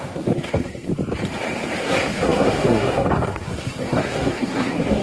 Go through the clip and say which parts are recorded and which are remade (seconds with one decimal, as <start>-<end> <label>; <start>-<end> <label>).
0.0-0.9 remade; 0.9-1.8 recorded; 1.8-5.0 remade